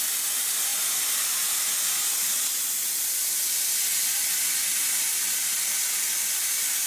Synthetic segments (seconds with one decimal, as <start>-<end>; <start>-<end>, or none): none